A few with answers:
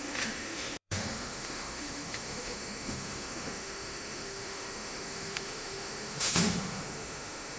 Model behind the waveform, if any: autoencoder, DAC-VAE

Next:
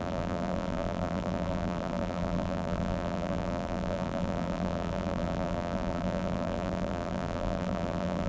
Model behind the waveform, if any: vocoder, BigVGAN v2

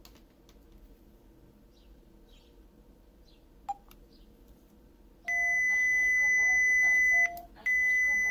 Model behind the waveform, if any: none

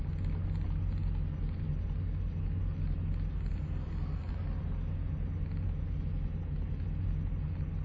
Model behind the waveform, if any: none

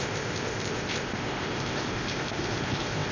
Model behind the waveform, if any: codec, ZipCodec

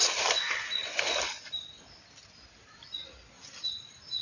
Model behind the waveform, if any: none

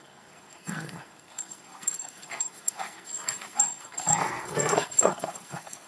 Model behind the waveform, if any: codec, SNAC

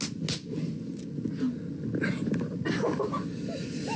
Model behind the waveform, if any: none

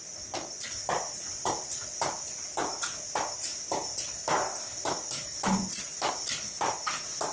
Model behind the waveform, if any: none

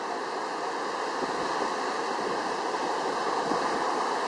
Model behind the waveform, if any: none